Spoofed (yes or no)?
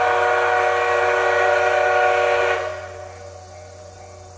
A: no